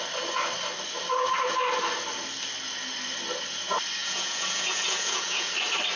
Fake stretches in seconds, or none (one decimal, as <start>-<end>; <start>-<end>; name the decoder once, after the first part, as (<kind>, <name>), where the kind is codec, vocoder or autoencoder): 4.0-5.5 (vocoder, Vocos)